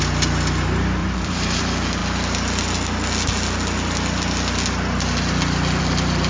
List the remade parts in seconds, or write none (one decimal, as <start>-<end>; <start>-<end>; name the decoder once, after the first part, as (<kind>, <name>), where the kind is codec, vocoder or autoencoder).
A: 1.0-1.6 (vocoder, BigVGAN v2)